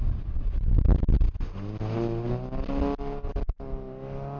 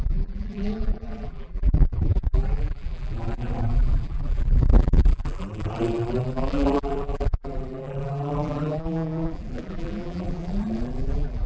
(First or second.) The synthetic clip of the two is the second